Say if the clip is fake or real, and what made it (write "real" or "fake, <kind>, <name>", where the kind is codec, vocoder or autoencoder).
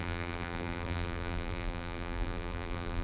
fake, vocoder, BigVGAN v2